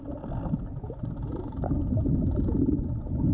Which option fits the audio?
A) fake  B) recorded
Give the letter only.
B